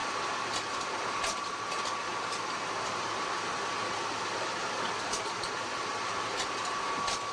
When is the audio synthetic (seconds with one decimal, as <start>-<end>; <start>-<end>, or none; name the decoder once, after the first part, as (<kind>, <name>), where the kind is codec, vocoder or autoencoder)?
none